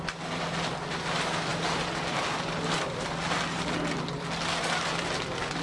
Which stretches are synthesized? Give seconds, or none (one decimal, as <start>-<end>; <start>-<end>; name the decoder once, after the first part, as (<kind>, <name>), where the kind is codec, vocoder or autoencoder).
none